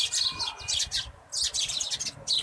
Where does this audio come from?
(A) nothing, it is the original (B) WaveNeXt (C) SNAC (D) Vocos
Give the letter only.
A